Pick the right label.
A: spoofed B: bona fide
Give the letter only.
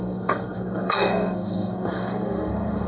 A